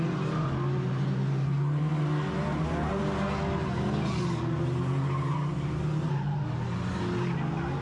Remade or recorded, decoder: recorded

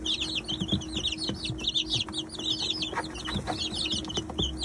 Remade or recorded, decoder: recorded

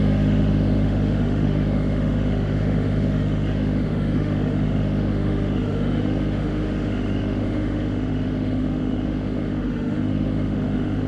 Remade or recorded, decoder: remade, autoencoder, DAC-VAE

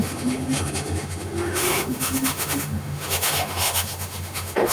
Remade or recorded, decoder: remade, autoencoder, DAC-VAE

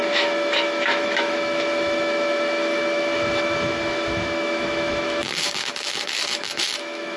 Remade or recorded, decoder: remade, autoencoder, DAC-VAE